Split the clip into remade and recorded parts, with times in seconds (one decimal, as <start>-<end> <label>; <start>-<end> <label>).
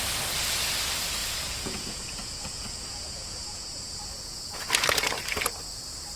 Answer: 0.0-1.2 recorded; 1.2-4.7 remade; 4.7-6.2 recorded